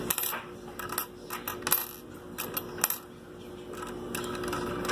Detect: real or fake real